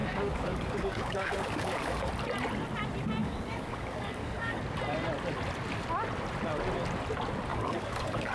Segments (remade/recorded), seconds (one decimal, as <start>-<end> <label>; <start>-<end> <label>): 0.0-2.1 remade; 2.1-3.2 recorded; 3.2-4.6 remade; 4.6-7.5 recorded; 7.5-8.3 remade